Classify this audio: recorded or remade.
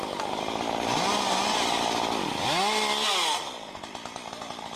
recorded